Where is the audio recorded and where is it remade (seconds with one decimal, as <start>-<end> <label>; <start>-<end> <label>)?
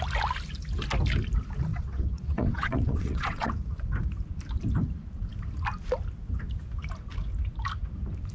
0.0-1.7 recorded; 1.7-3.5 remade; 3.5-8.3 recorded